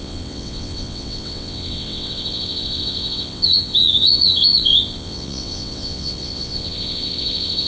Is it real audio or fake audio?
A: fake